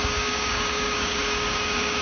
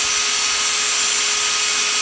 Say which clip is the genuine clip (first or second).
second